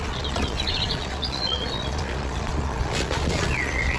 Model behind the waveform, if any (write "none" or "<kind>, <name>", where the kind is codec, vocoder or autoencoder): vocoder, Vocos